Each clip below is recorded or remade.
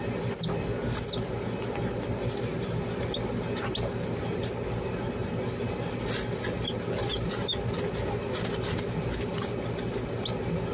recorded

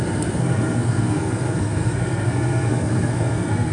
remade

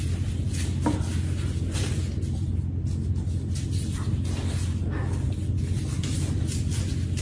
recorded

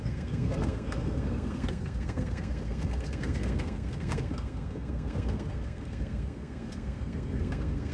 remade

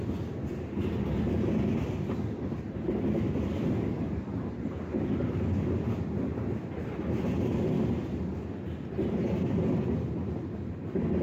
recorded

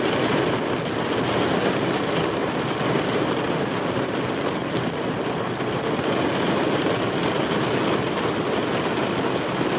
recorded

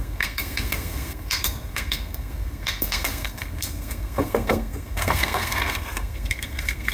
remade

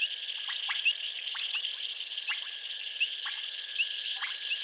recorded